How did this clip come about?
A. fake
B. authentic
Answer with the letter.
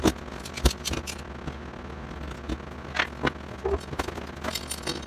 B